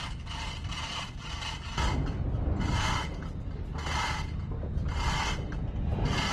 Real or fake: real